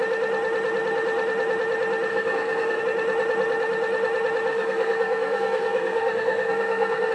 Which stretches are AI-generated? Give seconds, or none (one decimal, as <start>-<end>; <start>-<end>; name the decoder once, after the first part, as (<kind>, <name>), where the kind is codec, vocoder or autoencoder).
2.1-2.8 (codec, SNAC); 4.5-7.1